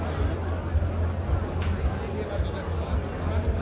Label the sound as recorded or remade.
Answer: recorded